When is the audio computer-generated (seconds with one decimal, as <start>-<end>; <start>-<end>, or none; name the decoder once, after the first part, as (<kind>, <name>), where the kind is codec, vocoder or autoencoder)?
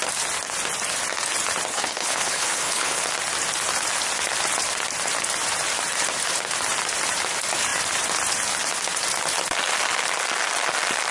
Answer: 1.7-3.0 (codec, HILCodec)